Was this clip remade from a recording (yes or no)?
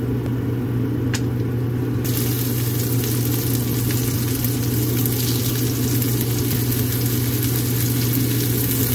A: no